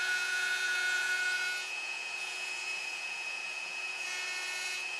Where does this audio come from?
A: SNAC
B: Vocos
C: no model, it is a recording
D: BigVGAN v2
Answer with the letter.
B